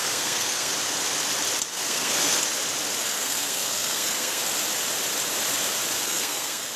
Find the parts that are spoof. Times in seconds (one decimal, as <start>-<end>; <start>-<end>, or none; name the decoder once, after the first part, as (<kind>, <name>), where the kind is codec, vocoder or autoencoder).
0.0-0.7 (codec, SNAC); 1.7-2.3; 3.0-4.4; 6.0-6.8